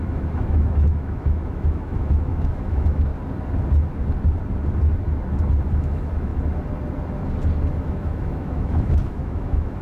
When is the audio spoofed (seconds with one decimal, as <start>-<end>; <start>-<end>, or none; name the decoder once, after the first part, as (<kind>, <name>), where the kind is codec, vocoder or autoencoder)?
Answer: 0.0-3.1 (autoencoder, DAC-VAE); 5.8-6.3; 7.8-9.8